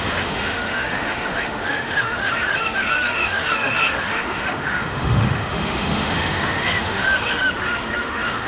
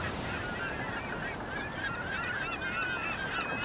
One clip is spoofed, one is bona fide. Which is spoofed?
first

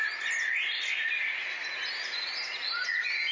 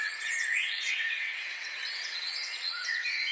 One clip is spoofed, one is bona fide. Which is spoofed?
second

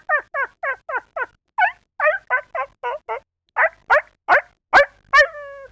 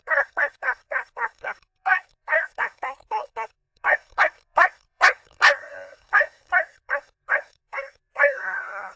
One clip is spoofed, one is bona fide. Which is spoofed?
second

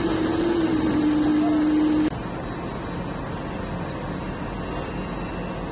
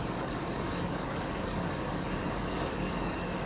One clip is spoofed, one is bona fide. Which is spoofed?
second